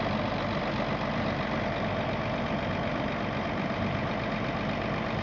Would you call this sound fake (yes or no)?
no